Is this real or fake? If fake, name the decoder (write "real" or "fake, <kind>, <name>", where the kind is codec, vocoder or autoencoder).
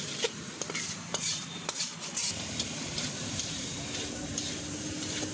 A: fake, vocoder, BigVGAN v2